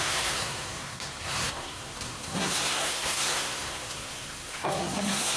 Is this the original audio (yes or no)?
no